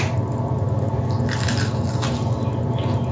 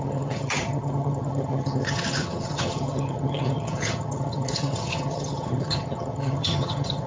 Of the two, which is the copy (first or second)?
second